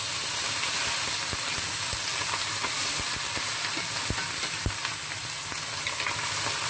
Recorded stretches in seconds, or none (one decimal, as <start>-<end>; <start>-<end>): 0.0-6.7